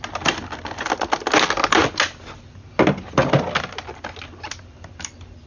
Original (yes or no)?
yes